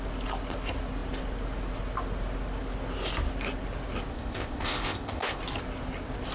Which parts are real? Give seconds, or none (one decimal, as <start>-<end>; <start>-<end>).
0.0-4.1; 5.4-6.3